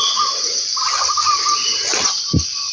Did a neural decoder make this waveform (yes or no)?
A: no